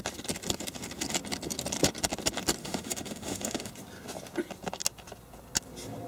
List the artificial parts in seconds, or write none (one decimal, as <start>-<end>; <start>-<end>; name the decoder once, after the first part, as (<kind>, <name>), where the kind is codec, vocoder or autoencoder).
2.6-3.7 (autoencoder, DAC-VAE)